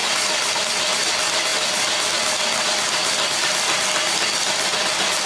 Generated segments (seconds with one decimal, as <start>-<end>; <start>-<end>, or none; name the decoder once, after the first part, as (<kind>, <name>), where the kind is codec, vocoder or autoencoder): none